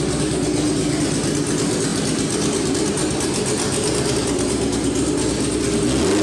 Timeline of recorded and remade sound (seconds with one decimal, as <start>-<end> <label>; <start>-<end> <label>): 0.0-1.9 recorded; 1.9-5.6 remade; 5.6-6.2 recorded